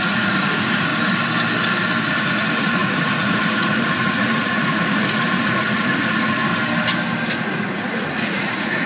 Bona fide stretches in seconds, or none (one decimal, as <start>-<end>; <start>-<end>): 0.9-2.0; 6.5-7.3